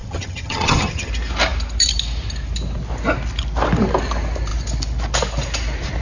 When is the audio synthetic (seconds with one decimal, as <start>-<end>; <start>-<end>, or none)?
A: 0.0-1.1